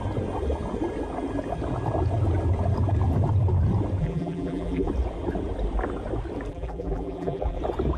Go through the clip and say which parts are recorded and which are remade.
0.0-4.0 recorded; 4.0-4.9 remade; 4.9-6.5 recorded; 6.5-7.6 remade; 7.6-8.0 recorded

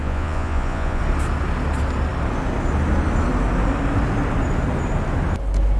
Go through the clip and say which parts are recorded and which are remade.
0.0-1.0 remade; 1.0-5.8 recorded

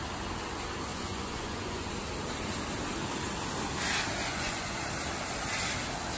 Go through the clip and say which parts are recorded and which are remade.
0.0-0.9 recorded; 0.9-1.9 remade; 1.9-4.2 recorded; 4.2-4.8 remade; 4.8-6.2 recorded

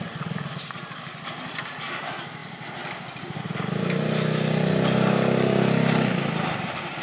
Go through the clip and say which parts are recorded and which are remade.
0.0-7.0 recorded

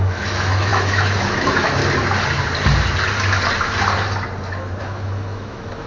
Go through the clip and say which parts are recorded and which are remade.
0.0-1.8 remade; 1.8-4.8 recorded; 4.8-5.9 remade

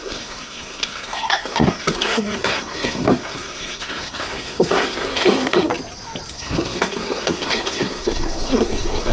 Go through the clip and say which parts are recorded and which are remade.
0.0-5.7 remade; 5.7-6.3 recorded; 6.3-9.1 remade

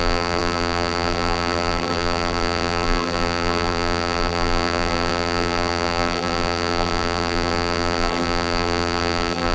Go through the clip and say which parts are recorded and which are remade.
0.0-9.5 remade

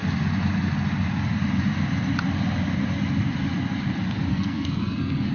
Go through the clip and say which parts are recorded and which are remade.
0.0-4.3 recorded; 4.3-5.3 remade